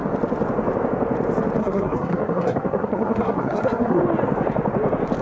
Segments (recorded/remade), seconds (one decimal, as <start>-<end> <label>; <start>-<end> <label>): 0.0-1.6 recorded; 1.6-4.0 remade; 4.0-5.2 recorded